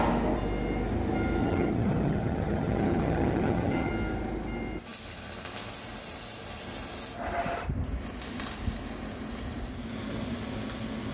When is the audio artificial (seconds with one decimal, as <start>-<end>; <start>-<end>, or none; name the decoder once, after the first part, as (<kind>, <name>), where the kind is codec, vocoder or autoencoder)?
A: 1.4-3.9 (vocoder, HiFi-GAN)